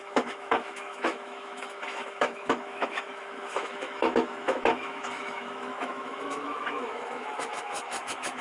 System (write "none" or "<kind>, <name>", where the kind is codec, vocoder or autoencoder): autoencoder, DAC-VAE